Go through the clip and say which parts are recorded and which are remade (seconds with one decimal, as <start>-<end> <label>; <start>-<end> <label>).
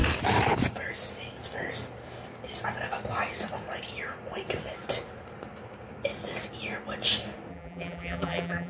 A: 0.0-7.5 recorded; 7.5-8.7 remade